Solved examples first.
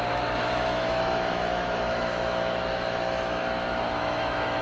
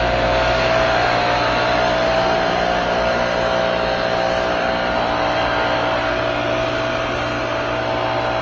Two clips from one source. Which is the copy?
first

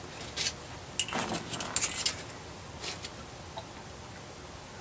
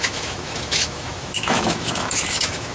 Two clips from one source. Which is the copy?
second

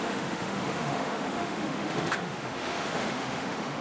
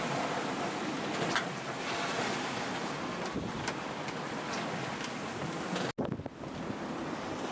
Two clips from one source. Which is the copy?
first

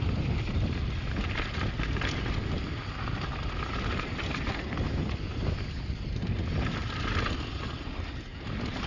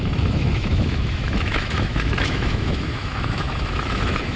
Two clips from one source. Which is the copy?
second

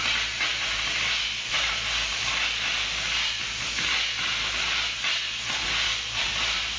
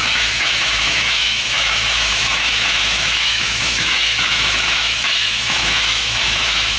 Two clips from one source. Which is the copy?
second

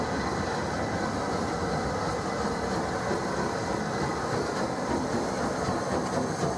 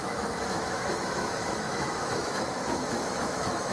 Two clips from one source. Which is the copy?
second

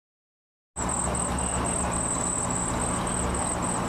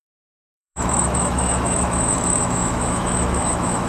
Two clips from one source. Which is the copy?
second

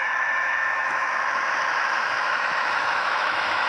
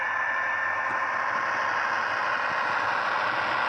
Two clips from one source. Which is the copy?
first